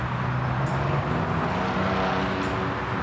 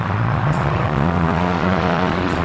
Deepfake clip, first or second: second